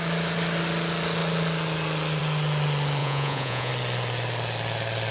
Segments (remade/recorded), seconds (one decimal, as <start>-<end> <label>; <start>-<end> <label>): 0.0-3.0 recorded; 3.0-3.7 remade; 3.7-5.1 recorded